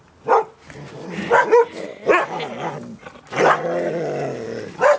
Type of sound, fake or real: real